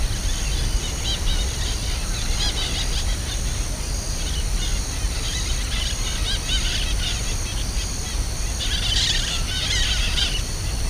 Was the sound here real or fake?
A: real